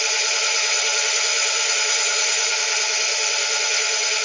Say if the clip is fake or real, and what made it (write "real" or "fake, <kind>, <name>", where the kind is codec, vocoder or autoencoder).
fake, vocoder, Vocos